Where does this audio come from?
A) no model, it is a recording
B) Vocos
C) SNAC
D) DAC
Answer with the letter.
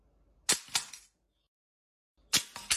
A